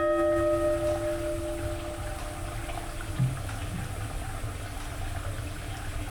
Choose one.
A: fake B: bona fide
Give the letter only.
B